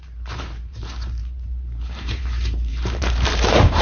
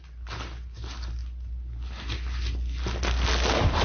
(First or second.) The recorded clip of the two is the second